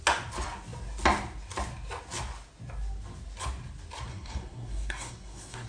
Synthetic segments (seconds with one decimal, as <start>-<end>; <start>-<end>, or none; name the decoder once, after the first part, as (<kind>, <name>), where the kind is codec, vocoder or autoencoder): 4.1-5.7 (codec, SNAC)